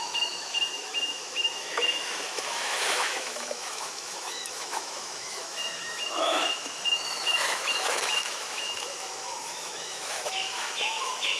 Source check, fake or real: fake